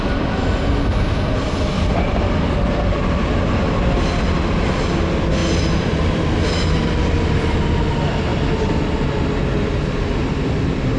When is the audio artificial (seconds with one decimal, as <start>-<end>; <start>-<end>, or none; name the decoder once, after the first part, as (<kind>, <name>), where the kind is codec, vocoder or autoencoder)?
none